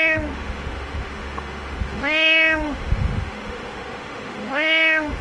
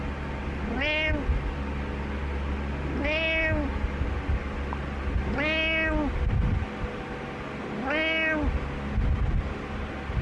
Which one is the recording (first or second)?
second